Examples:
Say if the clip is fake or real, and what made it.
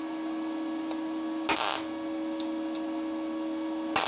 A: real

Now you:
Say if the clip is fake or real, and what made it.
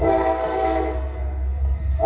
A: fake, codec, SNAC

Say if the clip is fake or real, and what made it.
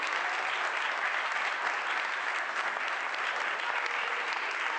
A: real